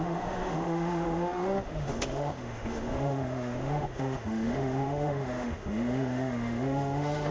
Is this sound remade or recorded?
remade